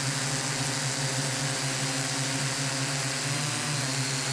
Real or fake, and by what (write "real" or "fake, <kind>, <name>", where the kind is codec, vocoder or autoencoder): real